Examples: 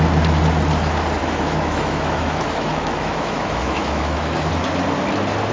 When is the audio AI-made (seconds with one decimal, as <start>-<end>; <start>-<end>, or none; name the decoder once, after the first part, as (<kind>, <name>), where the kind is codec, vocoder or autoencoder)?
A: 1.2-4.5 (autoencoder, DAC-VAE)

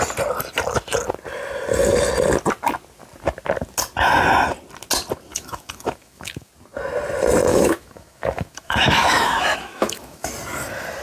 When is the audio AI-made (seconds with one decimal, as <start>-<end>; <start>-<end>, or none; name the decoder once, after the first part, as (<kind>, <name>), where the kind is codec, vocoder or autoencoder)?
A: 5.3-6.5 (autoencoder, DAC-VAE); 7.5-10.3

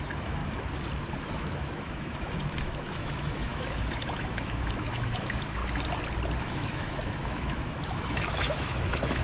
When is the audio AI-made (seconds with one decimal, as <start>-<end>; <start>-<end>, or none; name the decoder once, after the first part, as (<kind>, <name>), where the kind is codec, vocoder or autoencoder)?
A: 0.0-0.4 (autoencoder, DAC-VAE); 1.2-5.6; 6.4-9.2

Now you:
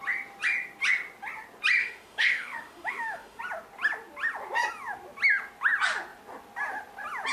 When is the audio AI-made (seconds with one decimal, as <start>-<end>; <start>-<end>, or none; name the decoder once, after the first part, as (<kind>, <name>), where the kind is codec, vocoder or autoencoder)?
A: 1.8-3.4 (autoencoder, DAC-VAE)

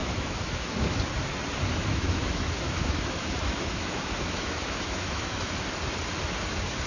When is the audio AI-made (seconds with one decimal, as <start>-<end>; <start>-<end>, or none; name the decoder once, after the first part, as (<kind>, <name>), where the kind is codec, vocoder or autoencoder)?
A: 0.0-1.0 (autoencoder, DAC-VAE); 1.9-5.5